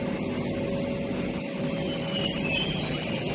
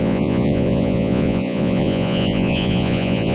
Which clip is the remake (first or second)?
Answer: second